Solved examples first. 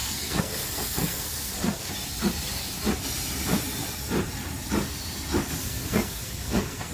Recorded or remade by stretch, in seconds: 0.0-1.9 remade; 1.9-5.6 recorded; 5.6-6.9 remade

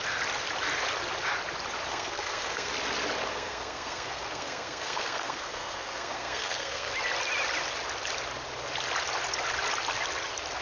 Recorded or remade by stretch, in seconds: 0.0-1.9 recorded; 1.9-2.7 remade; 2.7-3.3 recorded; 3.3-6.9 remade; 6.9-10.6 recorded

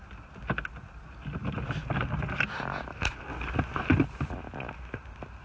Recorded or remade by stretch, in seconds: 0.0-5.4 recorded

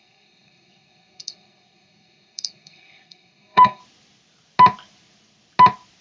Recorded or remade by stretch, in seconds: 0.0-3.8 remade; 3.8-6.0 recorded